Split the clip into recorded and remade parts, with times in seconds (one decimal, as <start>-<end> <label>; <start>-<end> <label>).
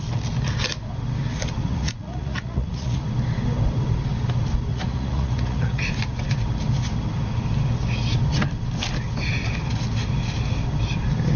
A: 0.0-1.6 recorded; 1.6-3.0 remade; 3.0-4.7 recorded; 4.7-5.9 remade; 5.9-11.4 recorded